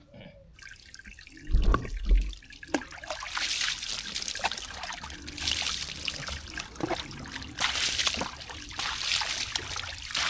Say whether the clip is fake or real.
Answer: real